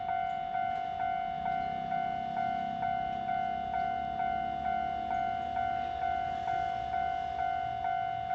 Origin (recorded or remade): recorded